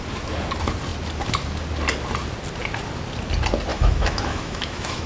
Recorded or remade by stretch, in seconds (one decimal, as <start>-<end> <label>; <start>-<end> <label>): 0.0-3.7 recorded; 3.7-5.1 remade